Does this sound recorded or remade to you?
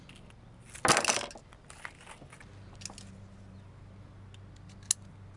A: recorded